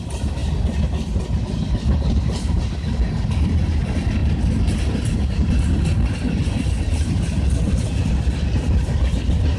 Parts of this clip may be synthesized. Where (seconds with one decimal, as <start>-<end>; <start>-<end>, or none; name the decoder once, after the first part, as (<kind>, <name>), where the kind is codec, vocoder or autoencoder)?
none